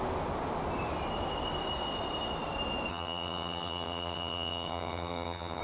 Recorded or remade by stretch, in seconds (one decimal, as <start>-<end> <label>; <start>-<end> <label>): 0.0-2.9 recorded; 2.9-5.6 remade